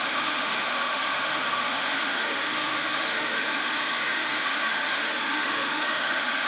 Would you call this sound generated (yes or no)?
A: yes